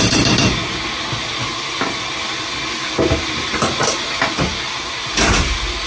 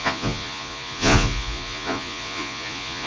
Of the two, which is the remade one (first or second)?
second